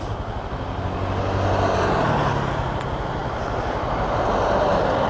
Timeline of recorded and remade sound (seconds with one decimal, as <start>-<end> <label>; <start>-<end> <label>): 0.0-5.1 recorded